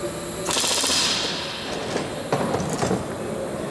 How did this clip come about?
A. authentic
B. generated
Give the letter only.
A